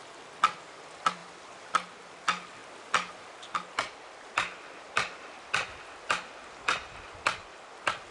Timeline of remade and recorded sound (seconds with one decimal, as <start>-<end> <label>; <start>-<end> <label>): 0.0-8.1 recorded